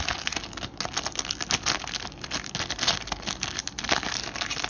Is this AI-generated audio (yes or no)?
no